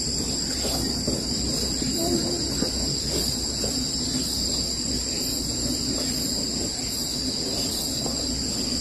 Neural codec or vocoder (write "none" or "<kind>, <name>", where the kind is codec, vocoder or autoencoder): none